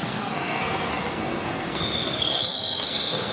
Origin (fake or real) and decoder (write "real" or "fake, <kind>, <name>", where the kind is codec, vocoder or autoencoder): fake, codec, SNAC